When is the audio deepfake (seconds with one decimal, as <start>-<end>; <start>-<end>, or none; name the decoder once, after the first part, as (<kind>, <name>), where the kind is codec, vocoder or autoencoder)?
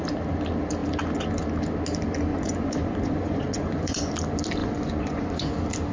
2.3-4.1 (vocoder, Vocos); 4.6-5.5